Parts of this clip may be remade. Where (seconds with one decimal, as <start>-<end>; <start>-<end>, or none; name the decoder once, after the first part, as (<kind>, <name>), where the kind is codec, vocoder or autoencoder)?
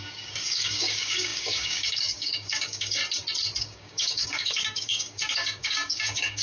0.0-3.0 (codec, DAC); 3.6-6.4